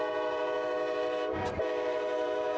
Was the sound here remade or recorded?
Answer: remade